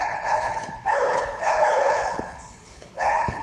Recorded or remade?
remade